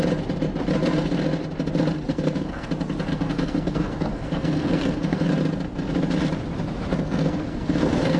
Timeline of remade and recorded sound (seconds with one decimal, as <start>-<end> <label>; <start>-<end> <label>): 0.0-2.1 recorded; 2.1-2.7 remade; 2.7-3.1 recorded; 3.1-5.3 remade; 5.3-6.9 recorded; 6.9-8.2 remade